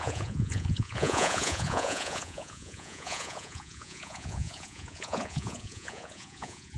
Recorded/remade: remade